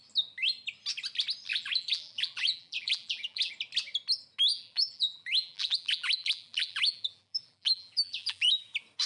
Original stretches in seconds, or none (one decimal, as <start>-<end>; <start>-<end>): 0.0-1.5; 3.5-4.5; 8.6-9.1